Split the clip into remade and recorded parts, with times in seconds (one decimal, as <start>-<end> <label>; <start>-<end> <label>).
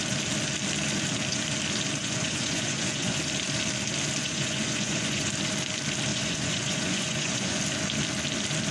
0.0-2.0 recorded; 2.0-3.2 remade; 3.2-4.2 recorded; 4.2-5.3 remade; 5.3-6.1 recorded; 6.1-7.6 remade; 7.6-8.7 recorded